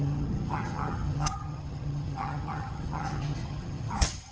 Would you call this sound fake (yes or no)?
yes